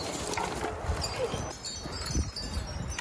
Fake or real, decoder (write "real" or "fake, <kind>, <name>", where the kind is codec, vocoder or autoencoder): fake, vocoder, BigVGAN v2